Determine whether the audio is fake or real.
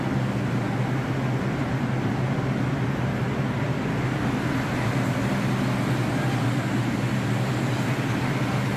real